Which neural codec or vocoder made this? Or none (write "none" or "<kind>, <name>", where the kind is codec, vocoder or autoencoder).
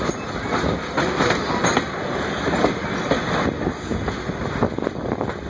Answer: none